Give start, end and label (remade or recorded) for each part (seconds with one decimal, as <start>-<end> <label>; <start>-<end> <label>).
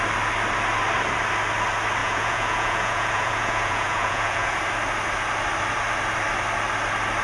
0.0-2.0 recorded; 2.0-4.6 remade; 4.6-7.2 recorded